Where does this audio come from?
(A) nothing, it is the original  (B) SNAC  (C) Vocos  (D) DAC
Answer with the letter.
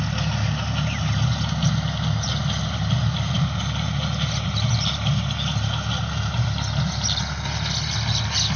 A